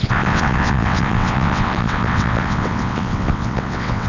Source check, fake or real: fake